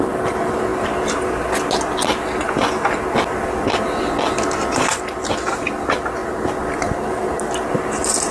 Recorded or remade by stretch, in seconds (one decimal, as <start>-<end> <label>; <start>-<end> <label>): 0.0-8.3 recorded